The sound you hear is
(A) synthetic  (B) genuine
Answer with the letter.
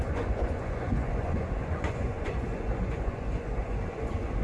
A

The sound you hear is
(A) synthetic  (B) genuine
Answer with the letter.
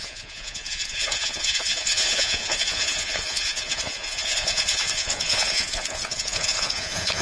A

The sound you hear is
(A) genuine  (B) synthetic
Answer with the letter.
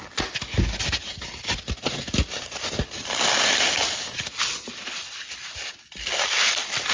A